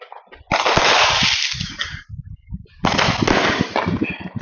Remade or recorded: recorded